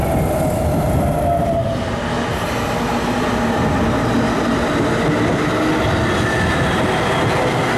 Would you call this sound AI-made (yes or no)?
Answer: no